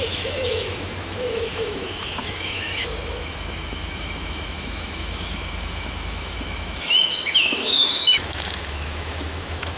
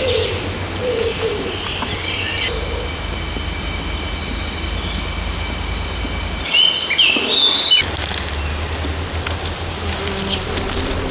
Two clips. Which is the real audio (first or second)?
second